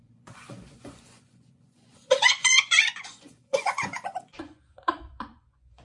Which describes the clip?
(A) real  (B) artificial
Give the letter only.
B